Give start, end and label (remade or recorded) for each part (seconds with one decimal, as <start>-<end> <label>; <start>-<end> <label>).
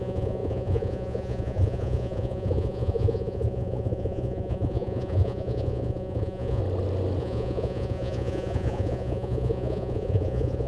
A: 0.0-6.6 remade; 6.6-7.2 recorded; 7.2-10.7 remade